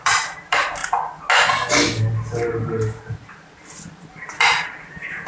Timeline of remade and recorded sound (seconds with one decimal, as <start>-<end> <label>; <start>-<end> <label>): 0.0-0.8 remade; 0.8-3.1 recorded; 3.1-5.3 remade